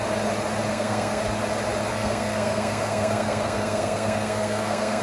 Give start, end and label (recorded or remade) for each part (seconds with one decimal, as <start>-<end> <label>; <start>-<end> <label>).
0.0-0.7 recorded; 0.7-1.2 remade; 1.2-1.9 recorded; 1.9-5.0 remade